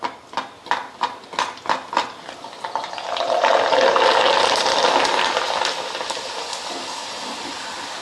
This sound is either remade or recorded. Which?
recorded